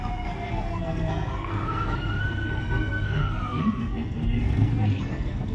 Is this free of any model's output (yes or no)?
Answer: no